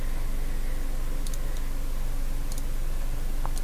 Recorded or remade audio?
recorded